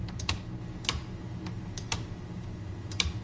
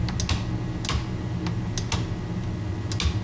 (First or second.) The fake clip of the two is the first